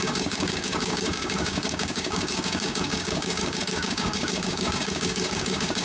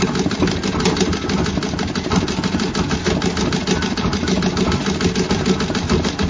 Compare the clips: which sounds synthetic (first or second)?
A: first